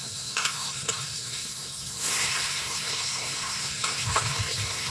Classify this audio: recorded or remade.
remade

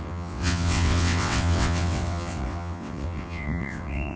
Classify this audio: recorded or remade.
remade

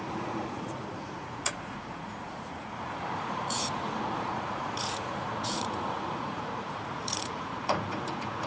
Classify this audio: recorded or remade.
remade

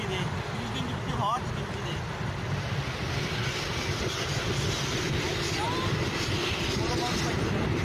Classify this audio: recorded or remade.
recorded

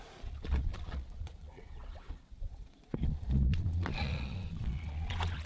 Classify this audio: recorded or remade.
remade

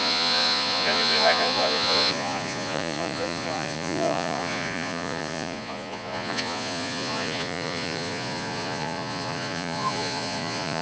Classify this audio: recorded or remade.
remade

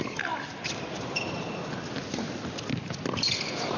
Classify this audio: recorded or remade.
recorded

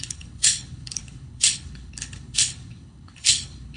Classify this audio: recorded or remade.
remade